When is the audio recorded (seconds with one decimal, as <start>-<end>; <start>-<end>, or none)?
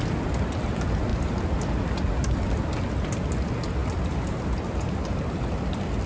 0.0-3.8; 4.3-6.1